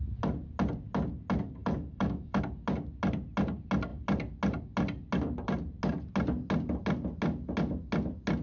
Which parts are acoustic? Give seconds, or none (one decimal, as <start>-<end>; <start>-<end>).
0.0-1.6; 2.4-8.4